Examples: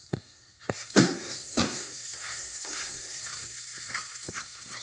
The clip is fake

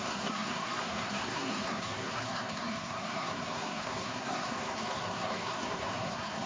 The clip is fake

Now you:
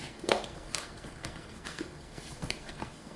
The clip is fake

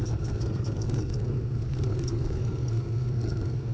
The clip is fake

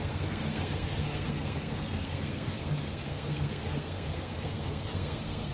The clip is fake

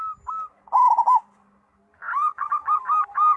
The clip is real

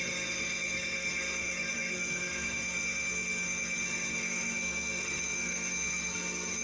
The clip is fake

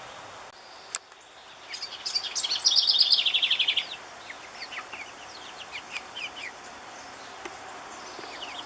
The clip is real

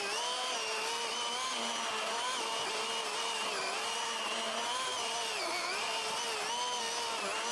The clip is real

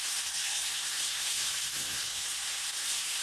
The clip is fake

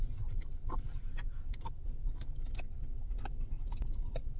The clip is real